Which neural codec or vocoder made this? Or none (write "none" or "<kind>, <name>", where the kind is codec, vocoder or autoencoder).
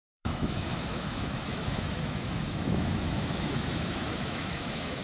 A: autoencoder, DAC-VAE